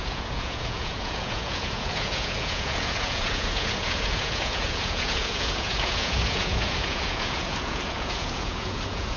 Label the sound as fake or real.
fake